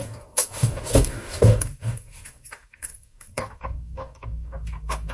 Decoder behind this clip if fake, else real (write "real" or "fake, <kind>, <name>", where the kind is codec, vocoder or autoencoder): fake, codec, DAC